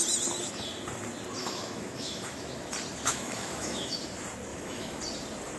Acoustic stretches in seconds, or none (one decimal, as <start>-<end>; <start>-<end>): 0.0-1.4; 2.7-3.1; 4.0-4.5; 5.0-5.6